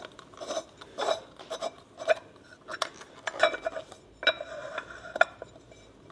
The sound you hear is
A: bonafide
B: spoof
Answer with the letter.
A